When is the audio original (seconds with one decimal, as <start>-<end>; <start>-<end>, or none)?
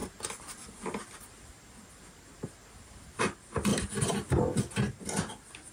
0.0-5.7